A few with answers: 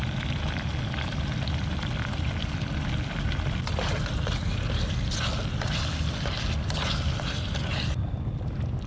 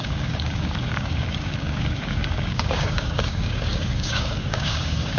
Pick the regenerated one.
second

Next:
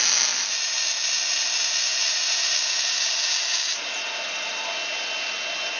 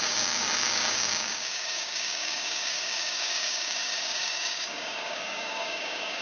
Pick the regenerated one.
second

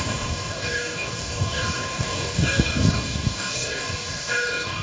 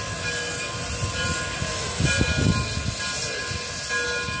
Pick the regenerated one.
first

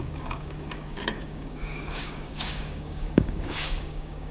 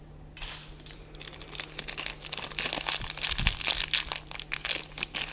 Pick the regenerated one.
first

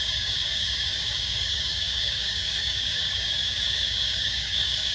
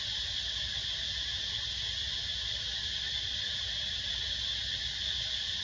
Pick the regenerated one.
first